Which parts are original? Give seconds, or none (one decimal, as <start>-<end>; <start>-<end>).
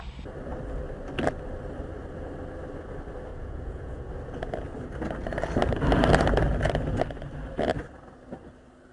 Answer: 0.0-3.3; 4.1-8.9